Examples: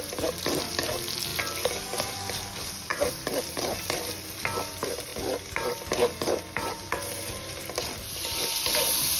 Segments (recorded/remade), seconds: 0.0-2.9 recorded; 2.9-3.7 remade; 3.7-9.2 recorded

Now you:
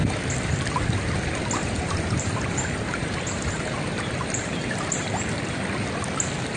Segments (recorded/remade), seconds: 0.0-1.6 recorded; 1.6-5.6 remade; 5.6-6.6 recorded

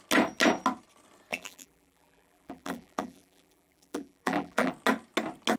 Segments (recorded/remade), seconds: 0.0-1.3 recorded; 1.3-4.7 remade; 4.7-5.6 recorded

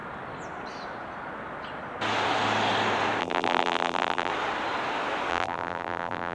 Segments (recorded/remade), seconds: 0.0-3.2 recorded; 3.2-4.3 remade; 4.3-5.3 recorded; 5.3-6.3 remade

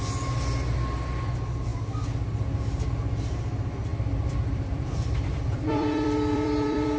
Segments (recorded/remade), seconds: 0.0-3.9 recorded; 3.9-7.0 remade

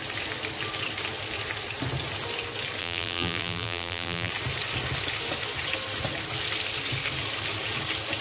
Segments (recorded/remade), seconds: 0.0-2.8 recorded; 2.8-4.3 remade; 4.3-8.2 recorded

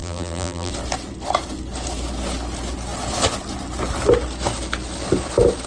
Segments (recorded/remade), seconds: 0.0-0.7 remade; 0.7-5.7 recorded